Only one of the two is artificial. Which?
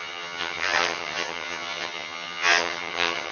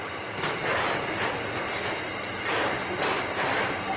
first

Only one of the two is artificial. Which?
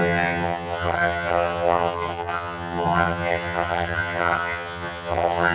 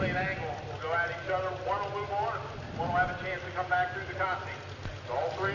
first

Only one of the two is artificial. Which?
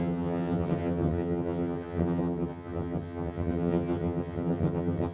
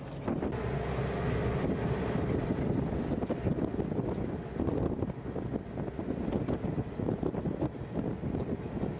first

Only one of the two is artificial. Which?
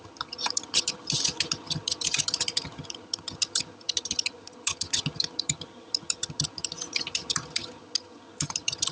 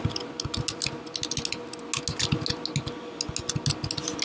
first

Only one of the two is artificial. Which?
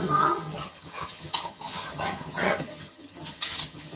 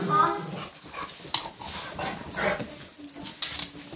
first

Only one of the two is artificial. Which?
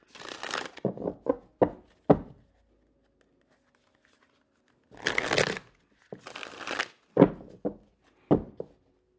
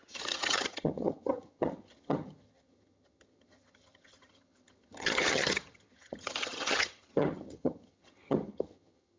second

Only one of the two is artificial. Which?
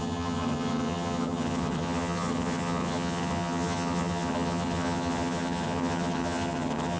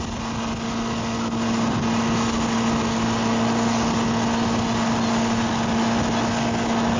first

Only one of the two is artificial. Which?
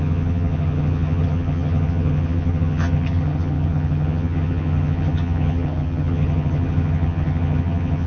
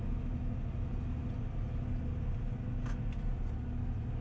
first